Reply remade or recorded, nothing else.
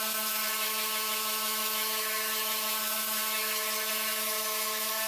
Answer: remade